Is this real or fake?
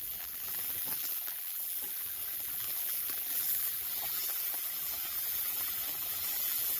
fake